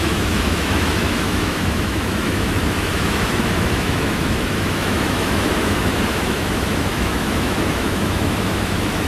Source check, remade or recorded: remade